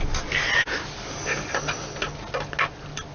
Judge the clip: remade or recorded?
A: recorded